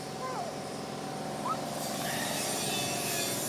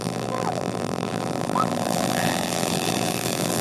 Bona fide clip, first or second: first